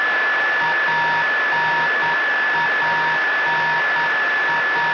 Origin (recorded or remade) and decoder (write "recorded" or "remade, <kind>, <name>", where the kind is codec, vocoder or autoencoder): recorded